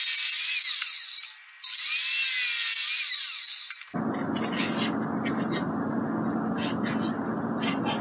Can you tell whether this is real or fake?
real